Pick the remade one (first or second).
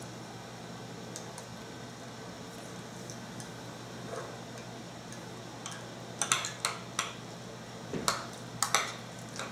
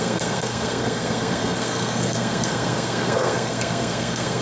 second